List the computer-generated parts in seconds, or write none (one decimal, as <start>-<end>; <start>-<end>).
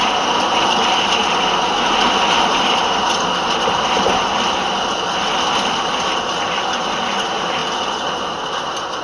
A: none